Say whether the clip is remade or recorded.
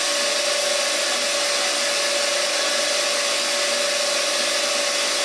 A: recorded